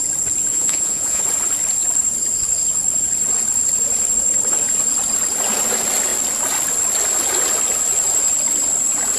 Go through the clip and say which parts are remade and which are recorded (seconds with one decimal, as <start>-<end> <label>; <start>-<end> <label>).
0.0-0.5 recorded; 0.5-1.2 remade; 1.2-9.2 recorded